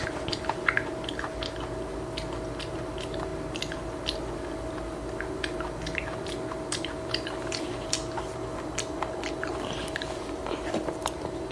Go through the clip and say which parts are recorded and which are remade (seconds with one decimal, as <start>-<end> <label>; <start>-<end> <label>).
0.0-11.5 recorded